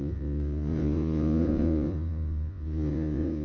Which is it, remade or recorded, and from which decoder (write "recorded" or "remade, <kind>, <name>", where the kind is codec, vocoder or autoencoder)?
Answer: remade, vocoder, Vocos